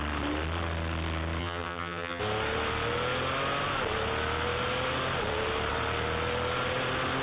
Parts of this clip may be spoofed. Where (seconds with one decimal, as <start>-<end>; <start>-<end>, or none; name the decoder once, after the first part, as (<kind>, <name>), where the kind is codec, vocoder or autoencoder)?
1.4-2.2 (vocoder, HiFi-GAN)